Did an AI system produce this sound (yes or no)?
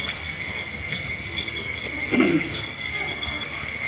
yes